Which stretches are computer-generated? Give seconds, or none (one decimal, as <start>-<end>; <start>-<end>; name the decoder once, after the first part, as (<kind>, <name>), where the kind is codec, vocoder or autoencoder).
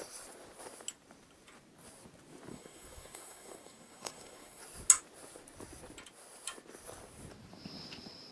2.5-4.6 (codec, SNAC)